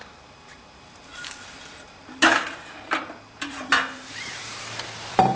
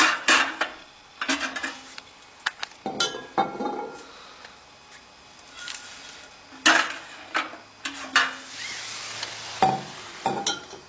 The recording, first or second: second